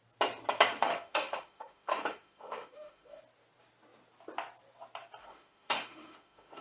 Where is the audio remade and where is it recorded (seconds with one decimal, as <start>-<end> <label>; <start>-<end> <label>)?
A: 0.0-0.8 recorded; 0.8-3.2 remade; 3.2-5.2 recorded; 5.2-6.6 remade